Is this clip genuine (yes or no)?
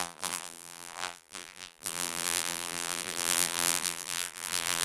no